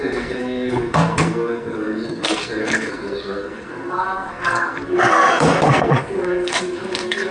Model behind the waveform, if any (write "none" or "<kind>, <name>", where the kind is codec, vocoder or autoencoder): codec, SNAC